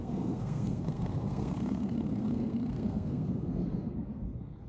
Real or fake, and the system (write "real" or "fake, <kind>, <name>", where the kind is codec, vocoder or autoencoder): fake, codec, SNAC